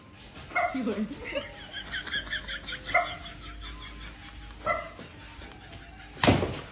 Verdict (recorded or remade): recorded